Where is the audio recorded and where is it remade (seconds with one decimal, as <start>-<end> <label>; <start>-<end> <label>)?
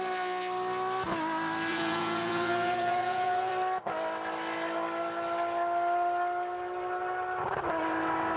0.0-1.7 recorded; 1.7-3.5 remade; 3.5-8.4 recorded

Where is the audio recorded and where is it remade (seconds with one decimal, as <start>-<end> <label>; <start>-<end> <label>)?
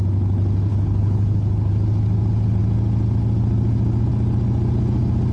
0.0-0.7 recorded; 0.7-1.7 remade; 1.7-5.3 recorded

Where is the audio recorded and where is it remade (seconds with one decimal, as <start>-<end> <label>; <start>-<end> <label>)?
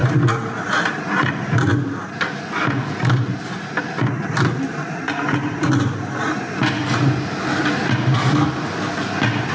0.0-9.5 recorded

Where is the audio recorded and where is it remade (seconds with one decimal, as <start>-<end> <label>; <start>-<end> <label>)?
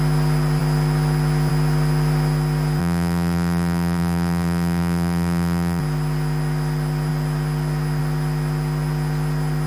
0.0-2.8 recorded; 2.8-5.8 remade; 5.8-9.7 recorded